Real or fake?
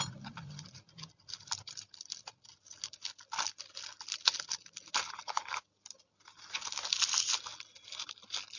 real